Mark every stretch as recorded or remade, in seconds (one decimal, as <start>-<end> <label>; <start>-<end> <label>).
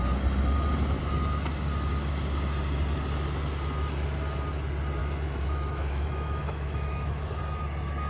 0.0-5.0 recorded; 5.0-7.4 remade; 7.4-8.1 recorded